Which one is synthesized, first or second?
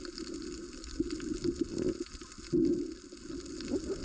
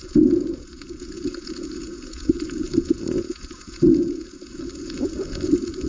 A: second